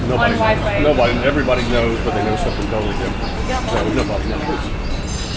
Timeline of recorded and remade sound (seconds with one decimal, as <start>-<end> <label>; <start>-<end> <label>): 0.0-5.4 recorded